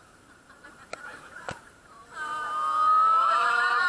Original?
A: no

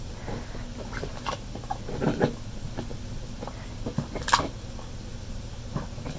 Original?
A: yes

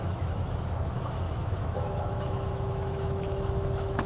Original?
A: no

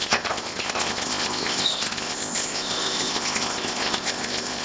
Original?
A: no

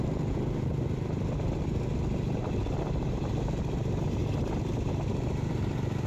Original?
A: yes